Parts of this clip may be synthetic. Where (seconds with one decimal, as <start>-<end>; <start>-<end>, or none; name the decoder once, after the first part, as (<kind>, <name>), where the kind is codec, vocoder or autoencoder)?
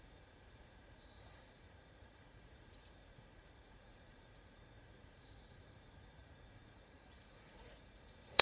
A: 0.0-8.4 (vocoder, Vocos)